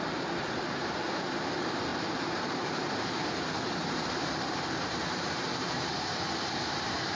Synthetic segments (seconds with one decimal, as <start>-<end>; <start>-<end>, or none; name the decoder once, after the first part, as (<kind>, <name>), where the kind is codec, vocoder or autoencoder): 0.0-7.2 (vocoder, BigVGAN v2)